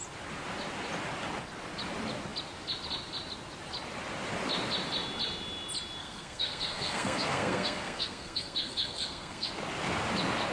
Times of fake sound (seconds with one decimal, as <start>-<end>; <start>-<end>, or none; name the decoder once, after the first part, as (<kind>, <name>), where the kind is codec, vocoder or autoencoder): 6.0-9.5 (codec, SNAC)